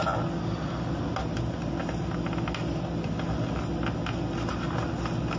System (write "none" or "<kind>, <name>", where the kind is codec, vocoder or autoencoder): none